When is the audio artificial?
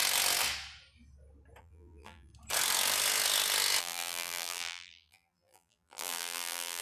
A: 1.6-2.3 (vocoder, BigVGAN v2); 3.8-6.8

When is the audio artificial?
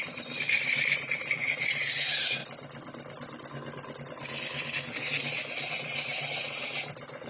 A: 0.0-2.4 (vocoder, BigVGAN v2); 5.7-7.3